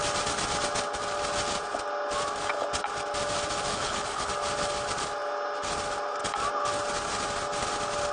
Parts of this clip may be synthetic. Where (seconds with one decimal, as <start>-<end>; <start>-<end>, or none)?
3.7-4.3